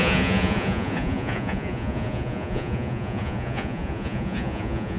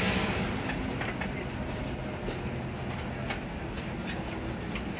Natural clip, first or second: second